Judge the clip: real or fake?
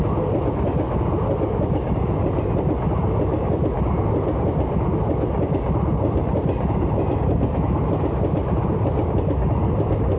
real